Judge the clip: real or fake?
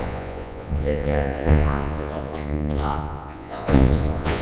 fake